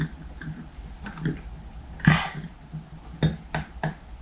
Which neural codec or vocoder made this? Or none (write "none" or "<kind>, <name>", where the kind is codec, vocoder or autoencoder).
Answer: none